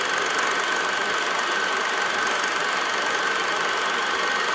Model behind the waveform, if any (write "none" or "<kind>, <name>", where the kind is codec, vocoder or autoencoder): none